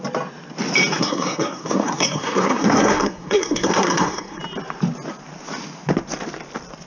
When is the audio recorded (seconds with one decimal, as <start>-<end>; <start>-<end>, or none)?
0.0-1.0; 4.4-6.9